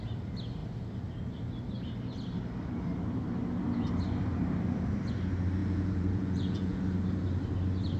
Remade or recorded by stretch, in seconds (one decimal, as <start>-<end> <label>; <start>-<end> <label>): 0.0-5.6 recorded; 5.6-6.8 remade; 6.8-8.0 recorded